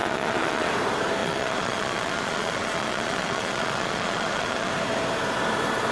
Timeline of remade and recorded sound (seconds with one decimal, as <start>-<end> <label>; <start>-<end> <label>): 0.0-0.7 remade; 0.7-1.2 recorded; 1.2-4.7 remade; 4.7-5.9 recorded